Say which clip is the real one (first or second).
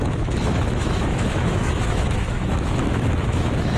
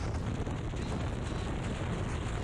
second